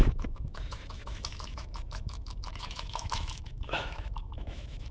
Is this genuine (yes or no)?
no